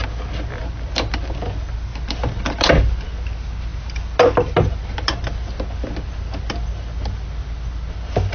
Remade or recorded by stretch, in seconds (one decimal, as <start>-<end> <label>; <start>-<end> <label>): 0.0-8.3 recorded